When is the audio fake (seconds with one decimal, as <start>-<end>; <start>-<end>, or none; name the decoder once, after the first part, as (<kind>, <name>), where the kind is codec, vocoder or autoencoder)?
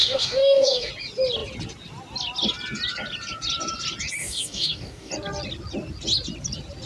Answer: 0.0-0.9 (codec, DAC); 4.2-5.1